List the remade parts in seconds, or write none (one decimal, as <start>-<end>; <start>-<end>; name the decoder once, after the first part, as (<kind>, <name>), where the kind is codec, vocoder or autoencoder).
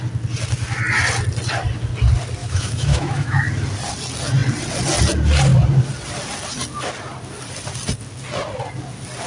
2.4-3.4 (autoencoder, DAC-VAE)